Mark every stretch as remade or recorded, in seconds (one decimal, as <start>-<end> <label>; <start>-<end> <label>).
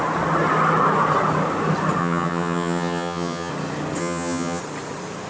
0.0-2.0 recorded; 2.0-3.5 remade; 3.5-4.0 recorded; 4.0-4.6 remade; 4.6-5.3 recorded